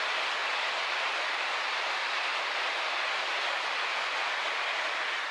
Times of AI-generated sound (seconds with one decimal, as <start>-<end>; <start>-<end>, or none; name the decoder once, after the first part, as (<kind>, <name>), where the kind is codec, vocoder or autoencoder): 0.4-1.2 (vocoder, BigVGAN v2)